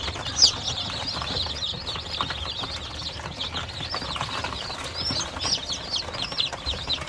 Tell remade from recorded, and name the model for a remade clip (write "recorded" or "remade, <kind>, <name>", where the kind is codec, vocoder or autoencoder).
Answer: recorded